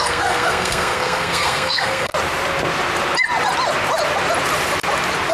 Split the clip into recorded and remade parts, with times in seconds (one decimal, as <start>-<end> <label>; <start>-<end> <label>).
0.0-2.1 remade; 2.1-5.3 recorded